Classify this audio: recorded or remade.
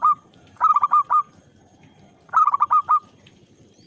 remade